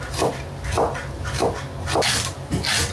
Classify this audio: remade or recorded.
recorded